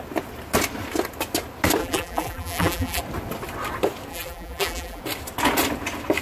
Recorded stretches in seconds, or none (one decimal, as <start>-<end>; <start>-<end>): 0.0-1.8; 3.0-4.1; 5.0-6.2